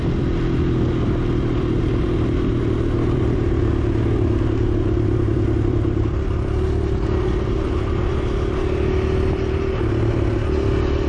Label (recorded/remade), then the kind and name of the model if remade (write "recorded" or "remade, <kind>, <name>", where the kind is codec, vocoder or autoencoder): recorded